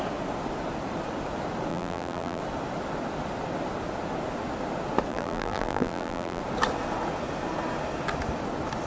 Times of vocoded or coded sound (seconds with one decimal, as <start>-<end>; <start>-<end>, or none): 1.7-2.4; 5.1-6.4